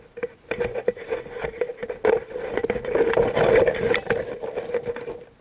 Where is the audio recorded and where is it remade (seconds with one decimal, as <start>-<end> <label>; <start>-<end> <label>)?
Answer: 0.0-5.4 recorded